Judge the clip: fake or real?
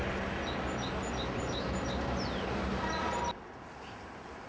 real